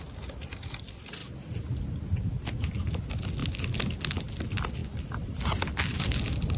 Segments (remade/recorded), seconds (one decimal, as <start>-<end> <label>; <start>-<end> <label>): 0.0-6.6 recorded